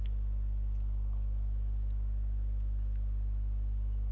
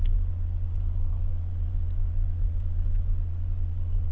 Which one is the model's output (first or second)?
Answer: second